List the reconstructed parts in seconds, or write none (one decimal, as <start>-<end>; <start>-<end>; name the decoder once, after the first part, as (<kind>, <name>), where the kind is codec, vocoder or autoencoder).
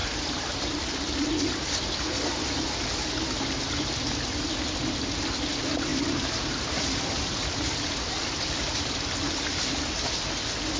0.0-1.8 (vocoder, BigVGAN v2); 5.9-8.8